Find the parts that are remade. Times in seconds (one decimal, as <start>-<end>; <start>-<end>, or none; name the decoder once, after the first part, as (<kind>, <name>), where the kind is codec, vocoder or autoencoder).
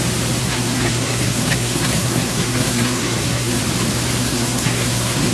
0.4-3.6 (codec, SNAC); 4.2-5.3